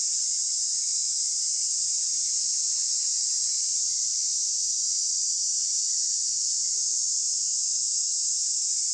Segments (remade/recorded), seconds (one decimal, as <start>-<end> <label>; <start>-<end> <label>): 0.0-7.5 recorded; 7.5-8.3 remade; 8.3-8.9 recorded